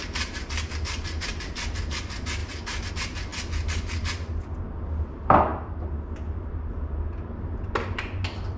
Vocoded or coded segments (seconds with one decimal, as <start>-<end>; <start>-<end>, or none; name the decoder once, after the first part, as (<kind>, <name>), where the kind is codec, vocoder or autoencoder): none